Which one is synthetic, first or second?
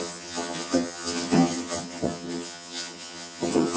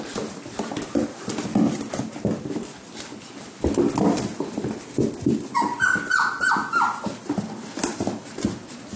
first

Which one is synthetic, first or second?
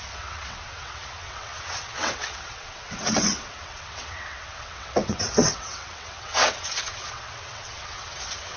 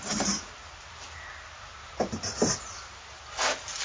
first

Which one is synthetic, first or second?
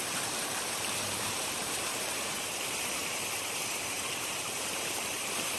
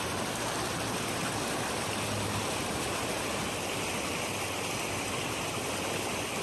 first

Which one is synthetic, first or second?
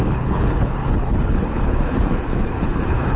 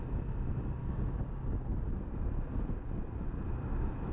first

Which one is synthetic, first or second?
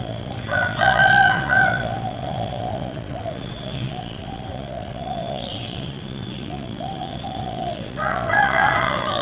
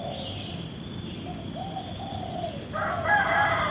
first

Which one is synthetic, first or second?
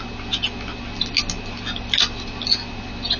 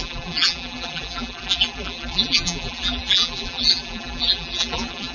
second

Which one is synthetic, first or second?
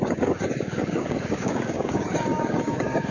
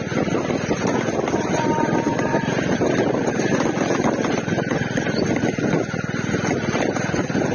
first